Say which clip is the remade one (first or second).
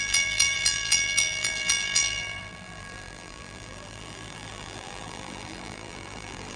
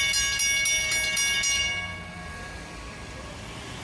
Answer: first